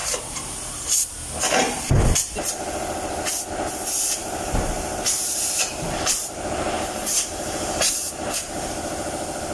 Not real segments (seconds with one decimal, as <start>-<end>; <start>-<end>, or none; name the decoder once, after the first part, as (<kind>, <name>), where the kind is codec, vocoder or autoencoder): 4.2-8.7 (vocoder, BigVGAN v2)